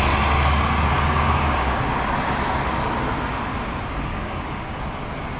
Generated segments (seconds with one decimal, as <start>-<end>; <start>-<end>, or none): 0.9-1.8; 4.1-4.8